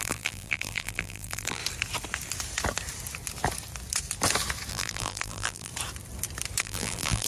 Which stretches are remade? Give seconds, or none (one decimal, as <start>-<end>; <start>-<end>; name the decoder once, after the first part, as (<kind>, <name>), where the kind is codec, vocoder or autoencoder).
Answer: 0.0-1.6 (vocoder, BigVGAN v2); 4.7-5.7; 6.6-7.3